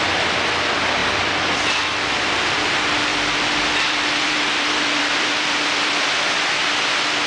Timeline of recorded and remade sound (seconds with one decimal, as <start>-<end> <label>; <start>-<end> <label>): 0.0-1.0 recorded; 1.0-1.8 remade; 1.8-3.1 recorded; 3.1-6.5 remade; 6.5-7.3 recorded